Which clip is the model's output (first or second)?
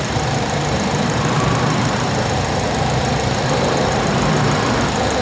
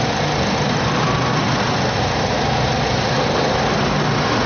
first